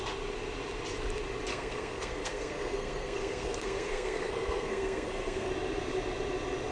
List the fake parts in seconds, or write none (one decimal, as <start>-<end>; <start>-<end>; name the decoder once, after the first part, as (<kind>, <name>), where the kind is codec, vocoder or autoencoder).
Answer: 1.5-5.5 (codec, SNAC)